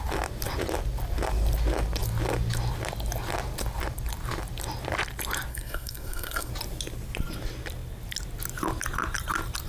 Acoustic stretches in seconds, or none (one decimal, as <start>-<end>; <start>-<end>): 0.0-5.5; 6.5-9.7